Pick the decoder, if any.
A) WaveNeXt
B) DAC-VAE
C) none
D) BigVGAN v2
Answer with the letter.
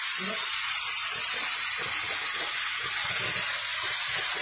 C